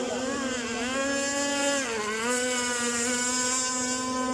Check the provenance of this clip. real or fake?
real